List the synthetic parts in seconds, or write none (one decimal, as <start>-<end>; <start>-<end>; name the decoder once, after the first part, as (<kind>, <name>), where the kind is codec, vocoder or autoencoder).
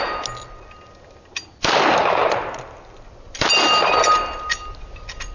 none